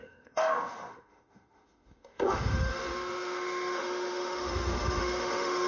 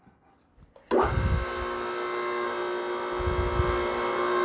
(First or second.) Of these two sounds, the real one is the second